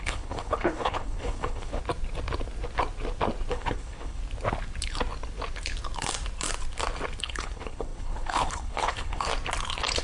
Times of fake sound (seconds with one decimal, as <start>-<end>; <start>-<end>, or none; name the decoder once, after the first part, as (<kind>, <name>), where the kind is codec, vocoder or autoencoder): 0.0-1.8 (codec, HILCodec); 3.5-4.2; 7.2-9.3